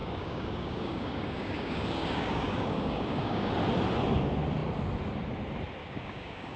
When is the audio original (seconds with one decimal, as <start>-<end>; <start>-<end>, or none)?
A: 3.5-5.8